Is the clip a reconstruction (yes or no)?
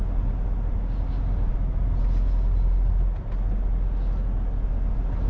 no